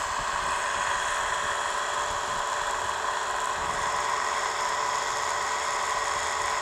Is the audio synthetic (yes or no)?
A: no